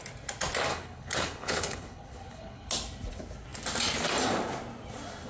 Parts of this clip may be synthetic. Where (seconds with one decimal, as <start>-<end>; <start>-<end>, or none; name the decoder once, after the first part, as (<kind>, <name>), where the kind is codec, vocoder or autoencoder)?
0.7-2.7 (codec, HILCodec)